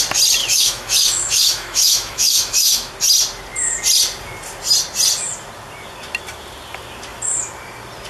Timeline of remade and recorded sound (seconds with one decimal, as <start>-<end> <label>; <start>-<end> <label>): 0.0-0.4 recorded; 0.4-2.9 remade; 2.9-8.1 recorded